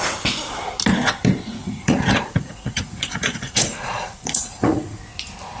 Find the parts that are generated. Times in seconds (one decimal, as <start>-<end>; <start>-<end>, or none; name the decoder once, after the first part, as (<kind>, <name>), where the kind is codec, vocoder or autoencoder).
1.6-5.0 (vocoder, Vocos)